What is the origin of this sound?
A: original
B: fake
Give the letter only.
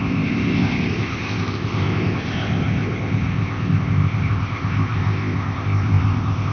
B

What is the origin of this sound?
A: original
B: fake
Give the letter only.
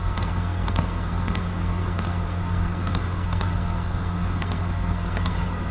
B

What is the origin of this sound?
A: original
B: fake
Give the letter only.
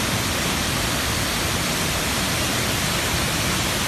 A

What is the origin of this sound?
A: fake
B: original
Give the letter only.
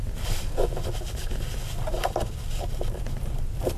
B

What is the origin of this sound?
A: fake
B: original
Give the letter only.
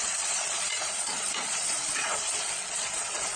A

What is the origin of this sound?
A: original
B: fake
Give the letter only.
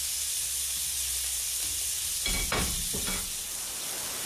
A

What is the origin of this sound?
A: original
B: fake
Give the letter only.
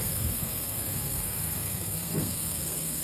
B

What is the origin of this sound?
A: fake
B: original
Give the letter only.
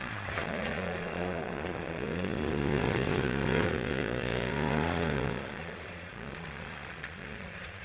A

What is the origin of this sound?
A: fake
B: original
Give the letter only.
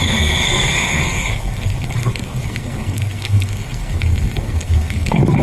A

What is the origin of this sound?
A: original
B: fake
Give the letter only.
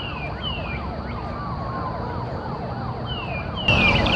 A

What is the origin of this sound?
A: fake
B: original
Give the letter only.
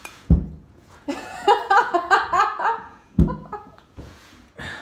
A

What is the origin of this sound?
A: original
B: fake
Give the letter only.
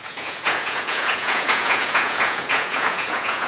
B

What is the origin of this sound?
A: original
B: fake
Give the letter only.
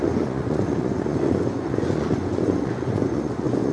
B